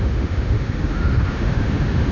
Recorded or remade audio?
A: remade